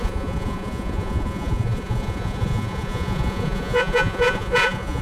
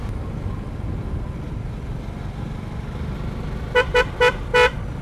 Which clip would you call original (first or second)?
second